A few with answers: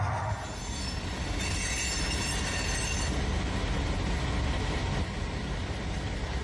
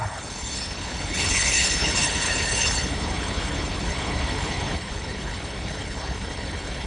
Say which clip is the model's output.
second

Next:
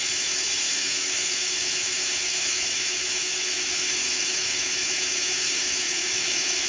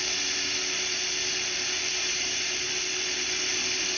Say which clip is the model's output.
first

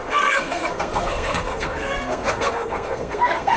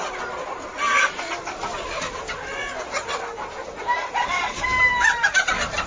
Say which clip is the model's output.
first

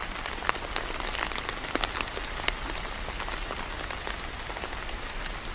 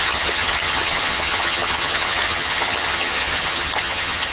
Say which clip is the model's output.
second